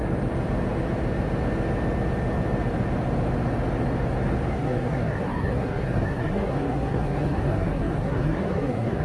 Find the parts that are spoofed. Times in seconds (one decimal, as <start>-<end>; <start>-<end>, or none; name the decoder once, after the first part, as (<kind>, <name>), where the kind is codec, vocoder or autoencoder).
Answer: 4.5-9.0 (codec, SNAC)